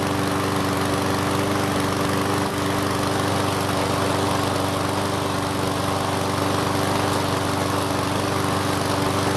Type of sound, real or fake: real